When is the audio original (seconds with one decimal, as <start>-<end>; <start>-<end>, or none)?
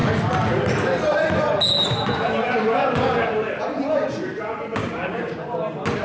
0.0-4.8; 5.4-6.0